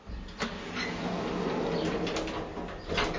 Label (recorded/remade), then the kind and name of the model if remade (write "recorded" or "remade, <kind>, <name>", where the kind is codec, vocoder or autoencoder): recorded